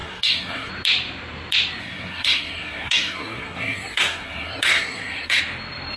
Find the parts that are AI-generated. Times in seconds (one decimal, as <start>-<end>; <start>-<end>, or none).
0.0-0.7; 1.8-5.4

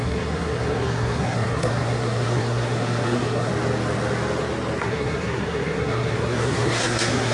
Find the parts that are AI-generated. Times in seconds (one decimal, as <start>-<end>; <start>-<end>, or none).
0.0-3.5; 4.8-7.3

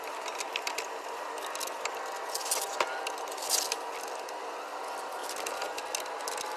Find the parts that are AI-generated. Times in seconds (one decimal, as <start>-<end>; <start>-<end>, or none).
none

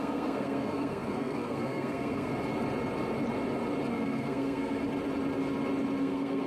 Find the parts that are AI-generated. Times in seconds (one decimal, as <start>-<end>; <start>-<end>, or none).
0.0-2.3; 3.9-4.8; 6.0-6.5

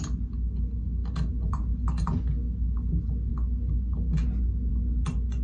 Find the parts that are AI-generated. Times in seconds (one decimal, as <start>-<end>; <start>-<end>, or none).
none

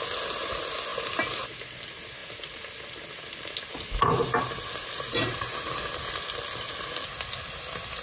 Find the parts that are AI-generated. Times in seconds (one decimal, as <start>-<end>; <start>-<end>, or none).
none